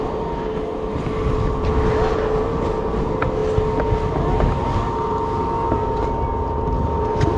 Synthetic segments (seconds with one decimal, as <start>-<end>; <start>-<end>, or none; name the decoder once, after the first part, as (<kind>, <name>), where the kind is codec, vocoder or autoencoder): none